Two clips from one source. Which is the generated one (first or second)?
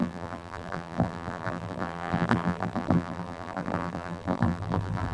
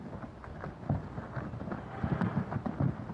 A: first